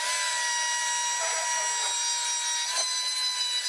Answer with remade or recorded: recorded